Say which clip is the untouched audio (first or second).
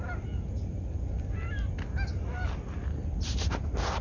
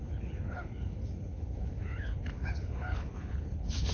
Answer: first